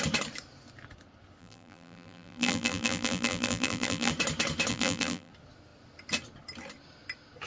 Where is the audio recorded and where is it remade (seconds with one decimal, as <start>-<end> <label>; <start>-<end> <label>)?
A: 0.0-1.4 recorded; 1.4-4.1 remade; 4.1-4.7 recorded; 4.7-5.3 remade; 5.3-7.5 recorded